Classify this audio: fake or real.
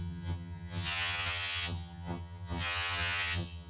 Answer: fake